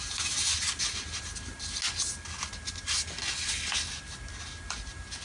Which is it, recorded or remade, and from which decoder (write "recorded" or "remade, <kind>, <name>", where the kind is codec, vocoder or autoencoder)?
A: recorded